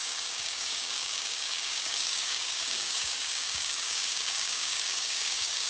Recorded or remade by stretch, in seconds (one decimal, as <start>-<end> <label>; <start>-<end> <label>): 0.0-5.7 remade